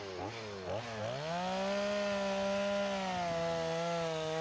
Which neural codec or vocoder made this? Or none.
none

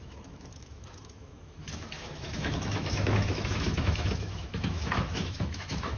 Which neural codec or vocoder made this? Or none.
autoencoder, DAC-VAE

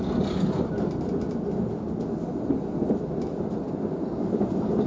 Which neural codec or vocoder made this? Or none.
none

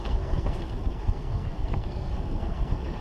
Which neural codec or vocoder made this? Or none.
codec, SNAC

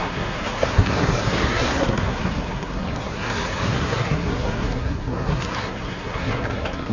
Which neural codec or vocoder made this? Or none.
codec, SNAC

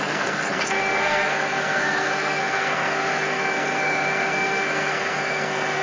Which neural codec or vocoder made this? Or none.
codec, SNAC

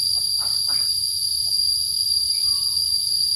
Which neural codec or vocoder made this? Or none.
vocoder, BigVGAN v2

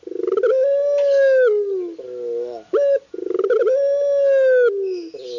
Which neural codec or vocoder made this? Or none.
none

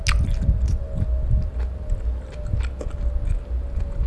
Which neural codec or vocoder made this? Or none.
none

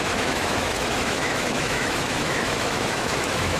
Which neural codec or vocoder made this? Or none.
autoencoder, DAC-VAE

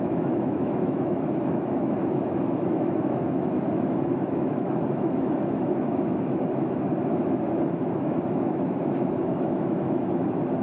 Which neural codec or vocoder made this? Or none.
autoencoder, DAC-VAE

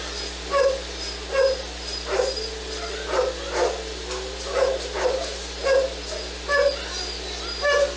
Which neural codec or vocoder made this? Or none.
none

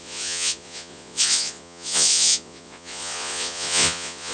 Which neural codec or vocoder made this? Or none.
vocoder, Vocos